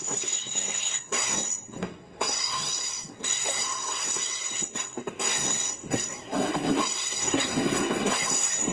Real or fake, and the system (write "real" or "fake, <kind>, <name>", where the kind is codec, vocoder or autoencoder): fake, codec, SNAC